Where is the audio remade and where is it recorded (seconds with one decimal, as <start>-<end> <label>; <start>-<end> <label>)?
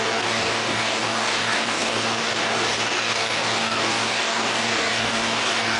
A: 0.0-5.8 remade